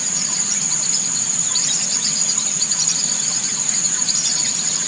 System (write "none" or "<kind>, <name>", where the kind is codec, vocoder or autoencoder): vocoder, Vocos